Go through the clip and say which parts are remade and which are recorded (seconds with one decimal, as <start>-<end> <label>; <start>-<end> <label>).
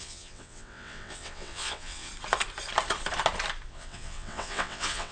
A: 0.0-2.1 remade; 2.1-3.7 recorded; 3.7-5.1 remade